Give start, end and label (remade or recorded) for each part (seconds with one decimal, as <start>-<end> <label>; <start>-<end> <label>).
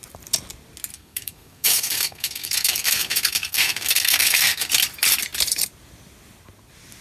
0.0-0.9 recorded; 0.9-4.7 remade; 4.7-7.0 recorded